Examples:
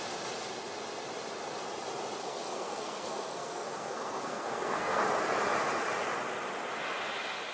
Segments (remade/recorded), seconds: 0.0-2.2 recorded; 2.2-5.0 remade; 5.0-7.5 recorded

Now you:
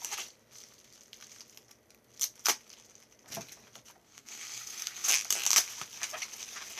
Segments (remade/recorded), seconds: 0.0-4.0 recorded; 4.0-5.1 remade; 5.1-6.8 recorded

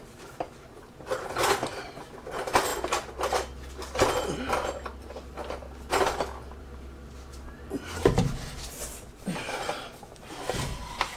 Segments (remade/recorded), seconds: 0.0-11.2 recorded

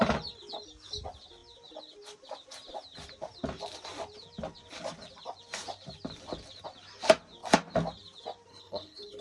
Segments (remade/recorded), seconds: 0.0-8.5 recorded; 8.5-9.2 remade